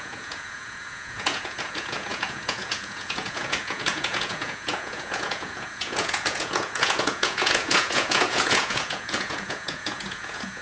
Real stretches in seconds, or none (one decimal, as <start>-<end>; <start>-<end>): none